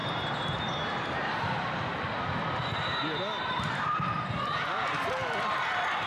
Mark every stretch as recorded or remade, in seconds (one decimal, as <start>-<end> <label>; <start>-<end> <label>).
0.0-1.3 recorded; 1.3-1.9 remade; 1.9-3.6 recorded; 3.6-5.2 remade; 5.2-6.1 recorded